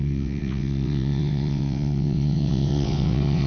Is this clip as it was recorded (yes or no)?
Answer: no